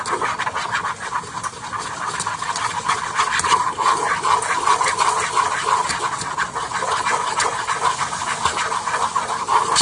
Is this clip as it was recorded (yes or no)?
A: yes